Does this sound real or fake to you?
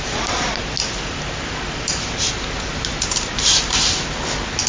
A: real